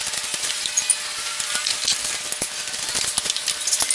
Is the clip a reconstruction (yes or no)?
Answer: no